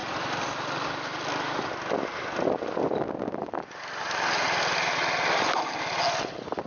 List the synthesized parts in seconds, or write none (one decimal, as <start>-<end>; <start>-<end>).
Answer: none